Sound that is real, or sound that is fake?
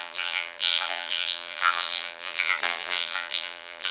fake